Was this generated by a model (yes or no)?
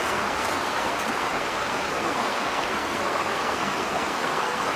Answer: yes